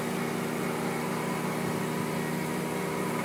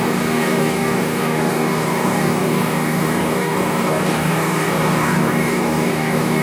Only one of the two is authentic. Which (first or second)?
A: first